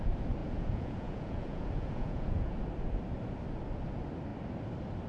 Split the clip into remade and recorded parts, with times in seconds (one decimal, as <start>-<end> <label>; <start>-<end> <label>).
0.0-0.4 recorded; 0.4-2.5 remade; 2.5-5.1 recorded